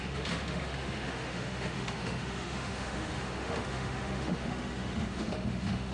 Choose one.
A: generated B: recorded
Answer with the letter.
A